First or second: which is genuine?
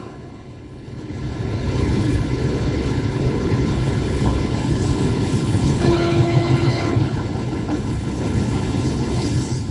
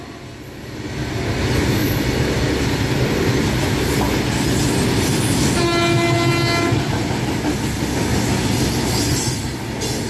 second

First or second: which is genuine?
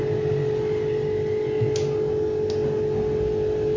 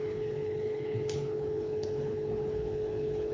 first